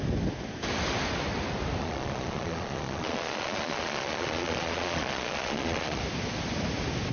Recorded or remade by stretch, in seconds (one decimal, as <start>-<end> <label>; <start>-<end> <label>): 0.0-1.8 recorded; 1.8-6.0 remade; 6.0-7.1 recorded